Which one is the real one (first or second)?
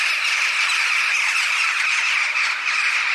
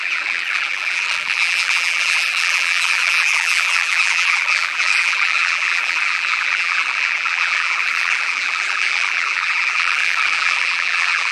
first